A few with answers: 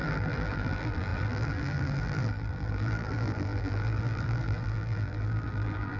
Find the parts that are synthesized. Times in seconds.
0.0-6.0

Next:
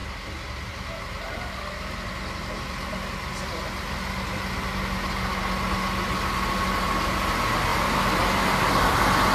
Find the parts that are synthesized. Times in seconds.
none

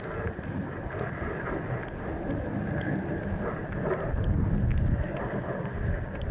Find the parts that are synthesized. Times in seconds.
none

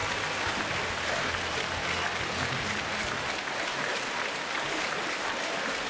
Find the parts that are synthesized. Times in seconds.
3.9-5.4

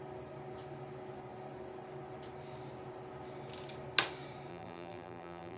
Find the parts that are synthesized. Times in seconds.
4.5-5.6